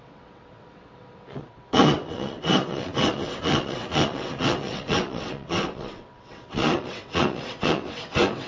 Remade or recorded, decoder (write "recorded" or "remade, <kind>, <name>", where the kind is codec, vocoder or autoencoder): remade, vocoder, WaveNeXt